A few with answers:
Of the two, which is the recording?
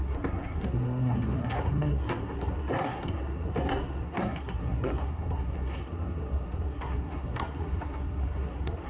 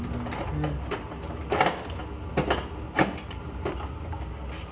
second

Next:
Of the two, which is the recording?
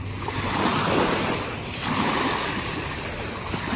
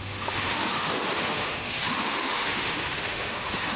first